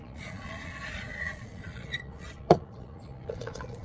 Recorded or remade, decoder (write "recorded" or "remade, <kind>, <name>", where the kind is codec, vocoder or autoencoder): remade, vocoder, Vocos